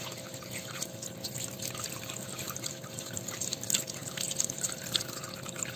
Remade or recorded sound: recorded